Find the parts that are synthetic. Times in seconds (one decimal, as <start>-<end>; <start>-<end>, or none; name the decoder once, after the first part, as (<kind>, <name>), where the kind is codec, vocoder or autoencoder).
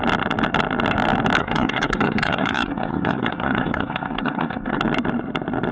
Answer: 1.4-4.8 (codec, SNAC)